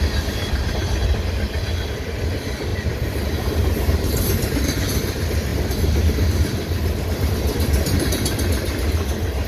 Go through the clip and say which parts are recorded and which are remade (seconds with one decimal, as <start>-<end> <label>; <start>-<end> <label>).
0.0-5.5 remade; 5.5-6.1 recorded; 6.1-9.5 remade